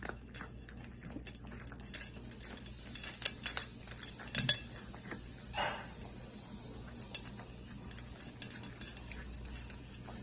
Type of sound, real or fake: real